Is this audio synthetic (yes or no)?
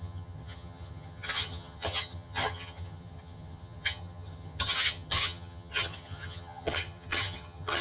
yes